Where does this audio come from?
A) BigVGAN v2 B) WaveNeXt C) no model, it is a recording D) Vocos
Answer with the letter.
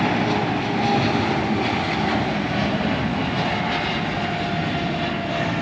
C